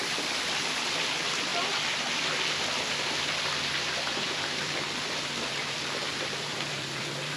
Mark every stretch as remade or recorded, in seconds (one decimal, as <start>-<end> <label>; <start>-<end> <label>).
0.0-1.5 remade; 1.5-3.4 recorded; 3.4-7.4 remade